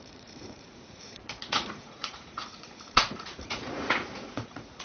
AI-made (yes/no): yes